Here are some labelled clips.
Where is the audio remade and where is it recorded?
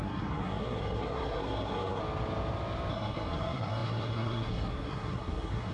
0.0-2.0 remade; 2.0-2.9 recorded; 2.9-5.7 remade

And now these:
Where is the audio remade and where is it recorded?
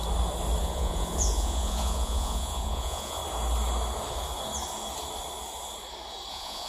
0.0-0.6 recorded; 0.6-3.2 remade; 3.2-6.3 recorded; 6.3-6.7 remade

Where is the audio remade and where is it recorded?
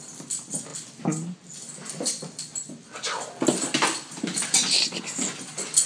0.0-5.9 recorded